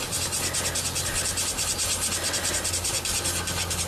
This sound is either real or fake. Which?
real